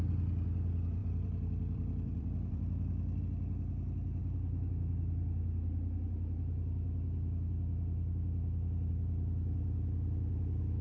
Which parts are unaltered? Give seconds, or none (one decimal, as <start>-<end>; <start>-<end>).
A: 0.0-1.0; 3.2-10.8